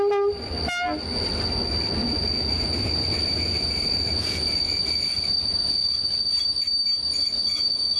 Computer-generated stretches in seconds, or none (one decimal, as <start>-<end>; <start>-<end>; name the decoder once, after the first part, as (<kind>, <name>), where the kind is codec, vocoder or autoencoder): 2.0-6.3 (vocoder, Vocos); 7.2-8.0